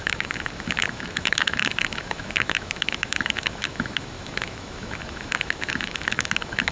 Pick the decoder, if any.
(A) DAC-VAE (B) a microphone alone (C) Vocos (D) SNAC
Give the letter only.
A